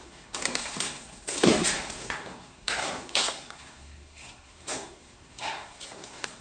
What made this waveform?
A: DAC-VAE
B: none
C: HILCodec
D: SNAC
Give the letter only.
D